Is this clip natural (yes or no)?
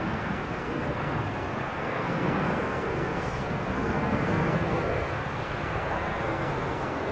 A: no